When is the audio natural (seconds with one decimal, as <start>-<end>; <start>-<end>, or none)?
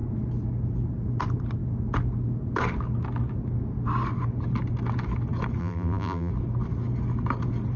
0.0-5.6; 6.3-7.8